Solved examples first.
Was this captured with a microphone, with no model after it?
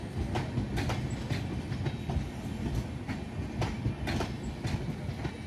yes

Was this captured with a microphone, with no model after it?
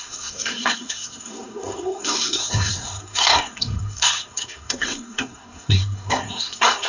no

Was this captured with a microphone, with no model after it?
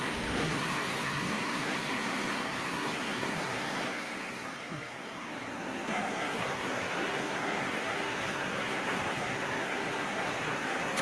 no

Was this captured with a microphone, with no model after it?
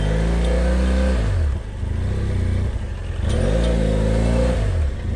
yes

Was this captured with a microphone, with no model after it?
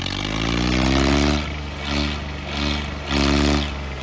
yes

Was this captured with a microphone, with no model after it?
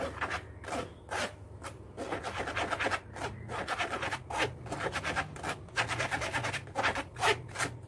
yes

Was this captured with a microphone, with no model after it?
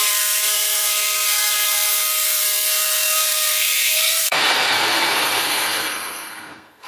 no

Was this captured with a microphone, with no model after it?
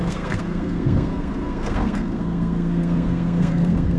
no